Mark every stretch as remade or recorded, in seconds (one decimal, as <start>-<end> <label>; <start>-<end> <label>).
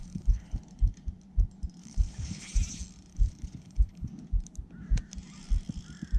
0.0-0.6 remade; 0.6-1.8 recorded; 1.8-2.5 remade; 2.5-3.1 recorded; 3.1-4.1 remade; 4.1-6.2 recorded